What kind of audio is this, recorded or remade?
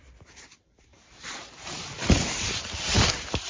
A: remade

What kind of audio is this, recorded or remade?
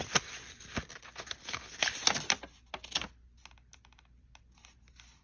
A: recorded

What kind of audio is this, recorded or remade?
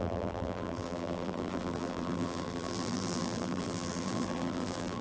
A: remade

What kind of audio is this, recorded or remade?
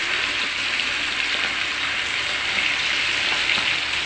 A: recorded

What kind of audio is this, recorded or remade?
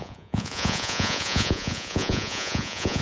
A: remade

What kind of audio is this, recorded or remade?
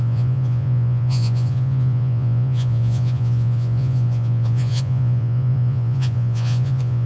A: remade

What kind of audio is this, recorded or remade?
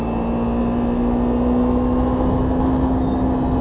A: recorded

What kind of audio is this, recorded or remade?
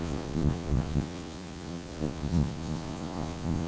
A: remade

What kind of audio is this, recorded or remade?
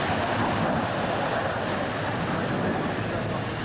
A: recorded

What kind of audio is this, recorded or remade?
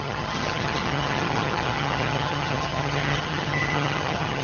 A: remade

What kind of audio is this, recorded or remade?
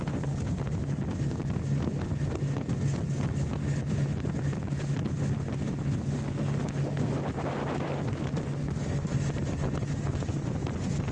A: recorded